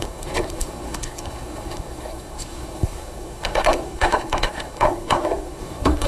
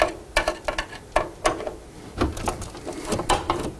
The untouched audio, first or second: second